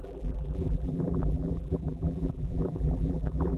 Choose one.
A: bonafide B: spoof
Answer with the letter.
B